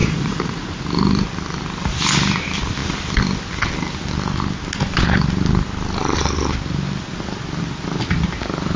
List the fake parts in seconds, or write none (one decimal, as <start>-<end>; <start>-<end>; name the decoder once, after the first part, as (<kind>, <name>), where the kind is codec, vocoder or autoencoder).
0.0-0.8 (vocoder, Vocos)